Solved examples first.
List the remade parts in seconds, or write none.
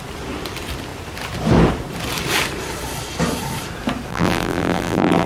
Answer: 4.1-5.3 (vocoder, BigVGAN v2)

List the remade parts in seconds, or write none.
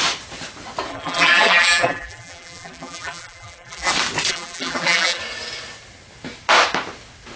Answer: 0.9-3.9 (vocoder, BigVGAN v2); 4.3-5.2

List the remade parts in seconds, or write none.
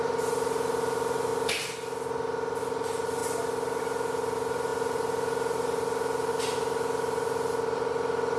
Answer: 0.0-1.3 (vocoder, BigVGAN v2); 2.6-3.2; 3.8-8.4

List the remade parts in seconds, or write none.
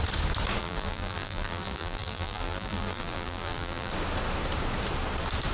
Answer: 0.6-3.9 (vocoder, BigVGAN v2)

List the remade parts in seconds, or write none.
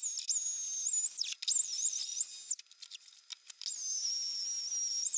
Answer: none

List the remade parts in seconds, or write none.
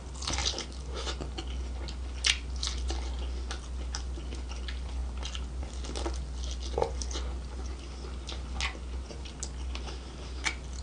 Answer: none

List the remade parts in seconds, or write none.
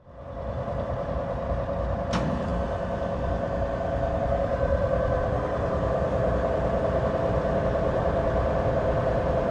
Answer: 0.0-2.5 (vocoder, BigVGAN v2); 4.2-9.5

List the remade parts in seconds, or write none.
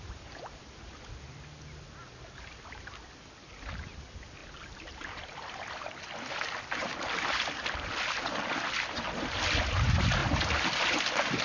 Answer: 4.4-5.8 (vocoder, BigVGAN v2); 10.2-11.0